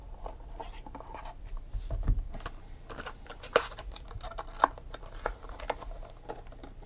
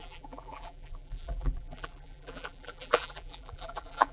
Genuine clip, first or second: first